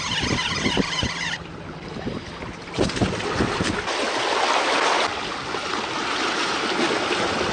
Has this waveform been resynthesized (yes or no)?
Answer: no